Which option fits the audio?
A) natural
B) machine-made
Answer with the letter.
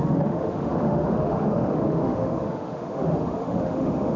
B